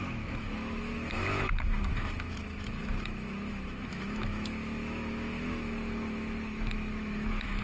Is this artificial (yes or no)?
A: yes